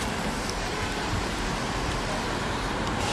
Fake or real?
fake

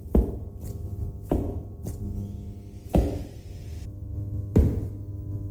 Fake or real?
real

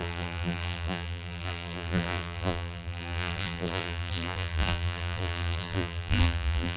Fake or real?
fake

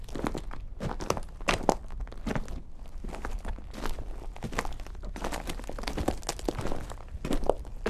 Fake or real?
real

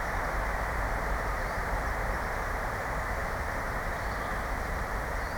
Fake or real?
fake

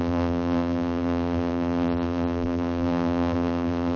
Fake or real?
fake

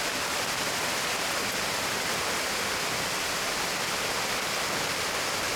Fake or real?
real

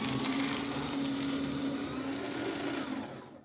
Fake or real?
real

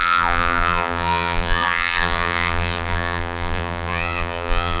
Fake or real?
fake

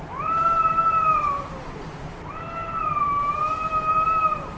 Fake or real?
fake